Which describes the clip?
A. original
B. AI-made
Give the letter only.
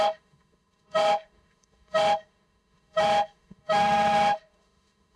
B